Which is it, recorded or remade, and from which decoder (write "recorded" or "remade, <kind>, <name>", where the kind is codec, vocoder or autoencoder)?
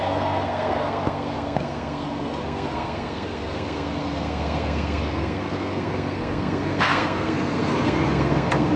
remade, codec, SNAC